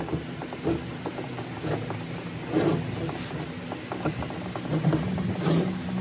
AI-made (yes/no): no